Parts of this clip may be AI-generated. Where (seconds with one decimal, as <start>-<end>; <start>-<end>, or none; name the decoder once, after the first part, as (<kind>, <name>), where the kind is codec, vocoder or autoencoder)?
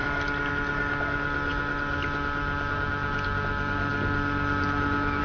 none